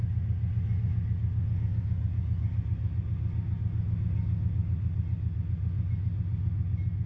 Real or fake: real